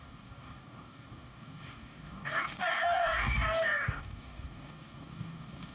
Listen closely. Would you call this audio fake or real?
fake